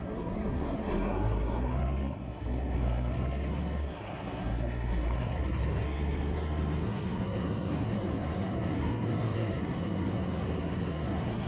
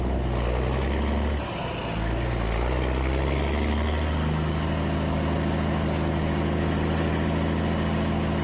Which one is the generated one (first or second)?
first